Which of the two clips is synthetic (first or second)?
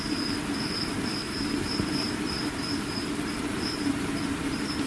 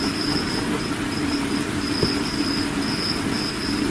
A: first